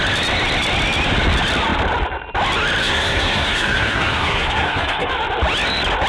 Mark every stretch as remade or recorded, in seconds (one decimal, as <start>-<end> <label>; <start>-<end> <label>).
0.0-2.8 recorded; 2.8-5.1 remade; 5.1-6.1 recorded